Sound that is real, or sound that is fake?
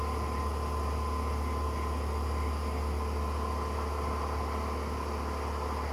real